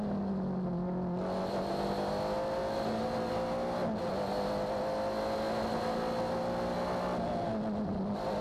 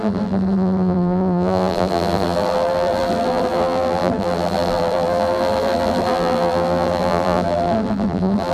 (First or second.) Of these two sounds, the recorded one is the first